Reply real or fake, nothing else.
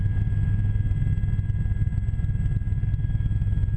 real